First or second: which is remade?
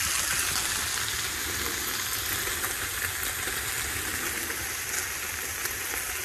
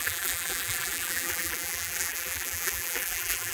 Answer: second